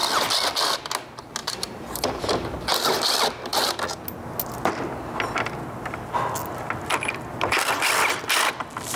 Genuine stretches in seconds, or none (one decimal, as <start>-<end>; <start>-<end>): 0.0-1.4; 2.2-9.0